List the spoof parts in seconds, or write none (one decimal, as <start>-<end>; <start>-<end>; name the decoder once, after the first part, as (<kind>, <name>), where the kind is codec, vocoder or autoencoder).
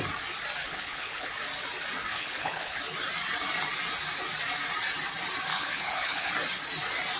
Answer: 0.6-1.3 (codec, HILCodec); 2.1-2.8; 5.5-6.3